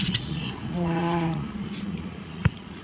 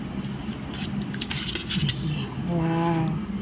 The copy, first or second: first